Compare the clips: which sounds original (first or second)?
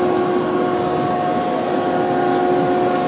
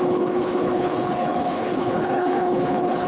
first